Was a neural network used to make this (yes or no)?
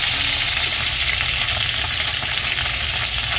no